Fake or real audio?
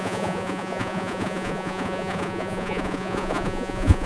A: fake